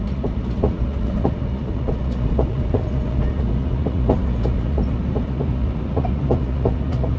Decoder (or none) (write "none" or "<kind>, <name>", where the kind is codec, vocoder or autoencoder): vocoder, Vocos